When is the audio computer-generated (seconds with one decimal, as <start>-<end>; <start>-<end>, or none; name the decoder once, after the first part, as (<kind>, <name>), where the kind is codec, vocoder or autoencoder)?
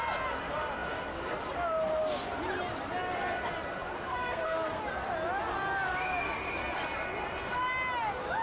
4.1-4.8 (codec, SNAC)